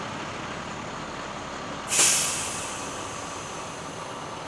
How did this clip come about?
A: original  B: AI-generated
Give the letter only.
A